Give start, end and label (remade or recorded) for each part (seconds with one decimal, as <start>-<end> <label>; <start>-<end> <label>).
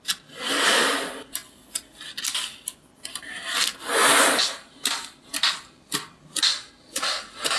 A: 0.0-7.6 recorded